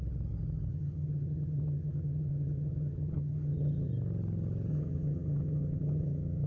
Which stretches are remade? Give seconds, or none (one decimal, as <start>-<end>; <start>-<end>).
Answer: 0.7-3.9; 4.7-6.5